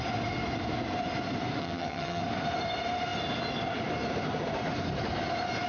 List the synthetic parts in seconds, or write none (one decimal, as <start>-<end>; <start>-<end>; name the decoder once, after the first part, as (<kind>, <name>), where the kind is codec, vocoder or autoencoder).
1.6-2.2 (vocoder, HiFi-GAN)